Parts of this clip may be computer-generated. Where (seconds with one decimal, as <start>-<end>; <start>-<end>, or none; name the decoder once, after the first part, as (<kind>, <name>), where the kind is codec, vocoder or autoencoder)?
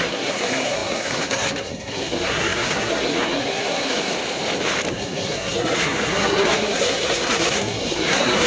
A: 0.0-4.1 (codec, SNAC); 4.9-8.5